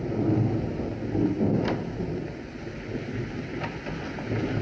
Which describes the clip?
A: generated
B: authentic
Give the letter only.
B